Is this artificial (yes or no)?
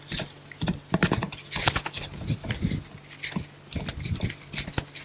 no